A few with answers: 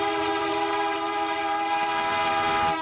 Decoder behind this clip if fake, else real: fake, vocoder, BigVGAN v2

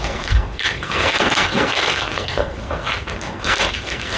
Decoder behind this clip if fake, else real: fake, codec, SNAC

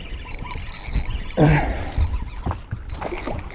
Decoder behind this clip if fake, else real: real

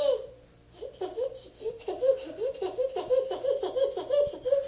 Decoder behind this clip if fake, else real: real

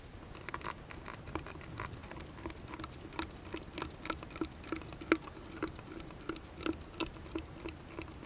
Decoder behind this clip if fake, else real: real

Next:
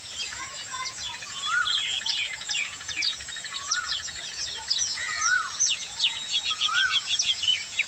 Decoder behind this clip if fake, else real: fake, vocoder, Vocos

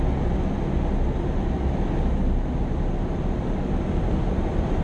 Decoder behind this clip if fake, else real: real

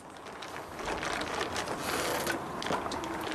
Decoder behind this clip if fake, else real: real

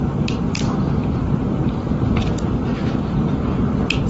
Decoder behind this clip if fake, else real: fake, vocoder, BigVGAN v2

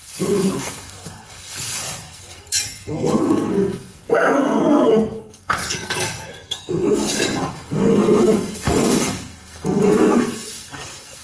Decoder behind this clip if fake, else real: fake, codec, SNAC